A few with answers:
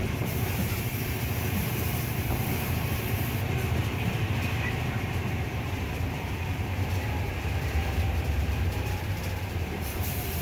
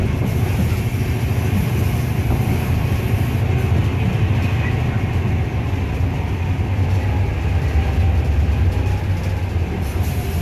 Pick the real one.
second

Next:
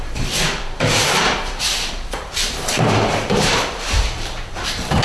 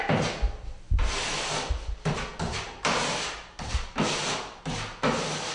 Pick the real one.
second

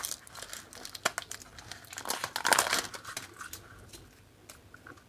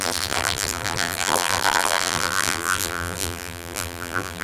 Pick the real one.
first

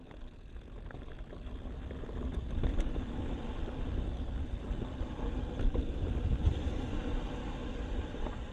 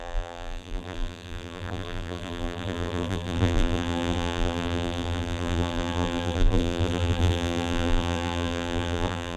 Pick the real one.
first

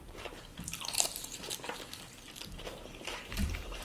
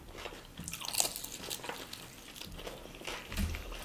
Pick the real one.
second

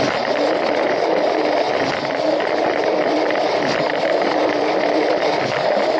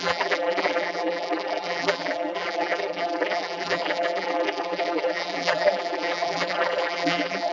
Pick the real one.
first